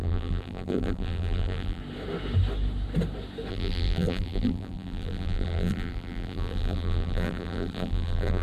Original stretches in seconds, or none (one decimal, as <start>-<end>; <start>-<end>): 1.8-3.5